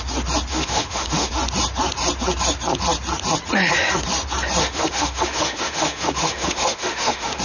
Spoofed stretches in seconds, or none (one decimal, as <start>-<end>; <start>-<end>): 0.5-1.3; 4.6-7.4